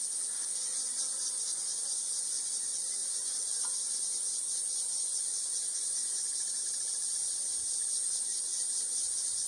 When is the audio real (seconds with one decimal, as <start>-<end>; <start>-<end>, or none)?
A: 0.0-1.1; 2.3-3.0; 6.6-9.5